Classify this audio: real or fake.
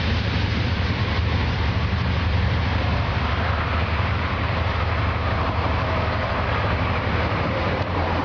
fake